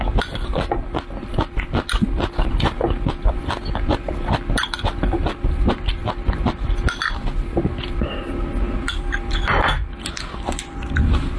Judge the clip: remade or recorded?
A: recorded